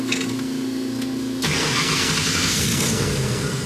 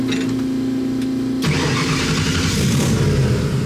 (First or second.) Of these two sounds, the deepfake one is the first